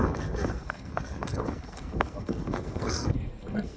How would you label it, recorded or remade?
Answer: remade